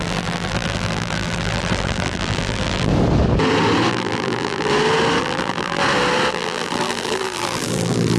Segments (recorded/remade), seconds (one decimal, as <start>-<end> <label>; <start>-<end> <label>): 0.0-2.9 remade; 2.9-3.9 recorded; 3.9-4.7 remade; 4.7-5.2 recorded; 5.2-5.8 remade; 5.8-6.3 recorded; 6.3-8.2 remade

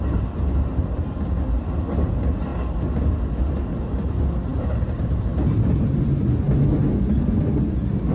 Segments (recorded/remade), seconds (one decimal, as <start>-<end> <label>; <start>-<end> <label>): 0.0-4.5 recorded; 4.5-5.3 remade; 5.3-8.1 recorded

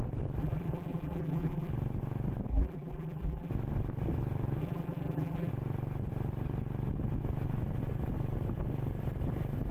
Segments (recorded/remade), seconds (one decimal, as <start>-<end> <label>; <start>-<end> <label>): 0.0-0.4 recorded; 0.4-1.7 remade; 1.7-2.5 recorded; 2.5-3.5 remade; 3.5-4.6 recorded; 4.6-5.5 remade; 5.5-9.7 recorded

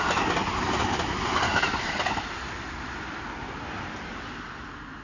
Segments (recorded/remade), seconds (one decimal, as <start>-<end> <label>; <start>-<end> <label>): 0.0-1.5 recorded; 1.5-3.2 remade; 3.2-5.0 recorded

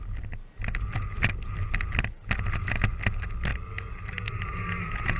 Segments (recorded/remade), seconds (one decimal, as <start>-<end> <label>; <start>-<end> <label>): 0.0-3.5 recorded; 3.5-4.3 remade; 4.3-5.2 recorded

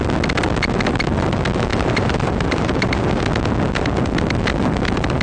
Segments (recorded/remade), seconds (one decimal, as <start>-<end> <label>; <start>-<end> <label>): 0.0-1.7 recorded; 1.7-3.2 remade; 3.2-5.2 recorded

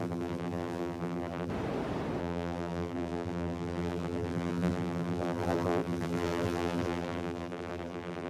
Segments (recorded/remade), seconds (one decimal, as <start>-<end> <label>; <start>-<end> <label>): 0.0-1.5 remade; 1.5-2.2 recorded; 2.2-8.3 remade